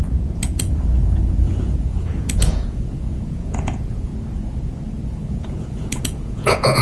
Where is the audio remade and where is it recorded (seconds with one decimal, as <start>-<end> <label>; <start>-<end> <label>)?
0.0-4.1 remade; 4.1-5.1 recorded; 5.1-6.8 remade